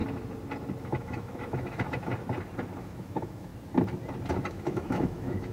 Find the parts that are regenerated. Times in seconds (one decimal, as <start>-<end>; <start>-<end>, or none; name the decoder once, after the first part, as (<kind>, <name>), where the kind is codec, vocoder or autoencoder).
0.8-2.1 (autoencoder, DAC-VAE); 2.8-3.5; 4.5-5.5